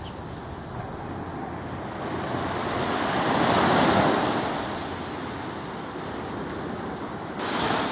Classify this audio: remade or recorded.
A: recorded